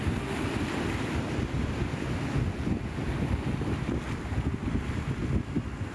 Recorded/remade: recorded